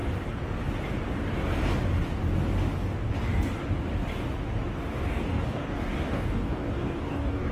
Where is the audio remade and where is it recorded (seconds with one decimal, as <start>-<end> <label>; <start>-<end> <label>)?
0.0-4.9 recorded; 4.9-7.5 remade